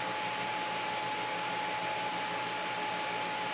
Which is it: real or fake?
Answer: real